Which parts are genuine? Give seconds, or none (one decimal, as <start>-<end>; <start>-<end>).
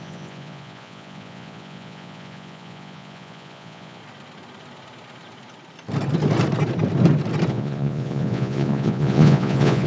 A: 4.0-7.5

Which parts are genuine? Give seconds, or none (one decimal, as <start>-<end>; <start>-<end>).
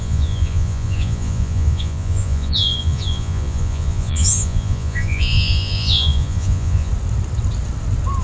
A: 6.9-8.2